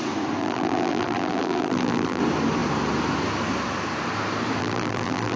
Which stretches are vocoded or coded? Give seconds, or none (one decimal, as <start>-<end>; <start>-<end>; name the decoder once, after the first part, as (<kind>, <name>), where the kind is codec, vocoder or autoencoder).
0.4-2.2 (vocoder, BigVGAN v2); 4.6-5.4